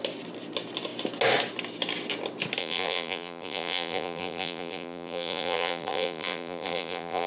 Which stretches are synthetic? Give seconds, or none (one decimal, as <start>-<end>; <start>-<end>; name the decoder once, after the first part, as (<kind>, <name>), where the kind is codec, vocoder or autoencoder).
2.6-7.3 (vocoder, BigVGAN v2)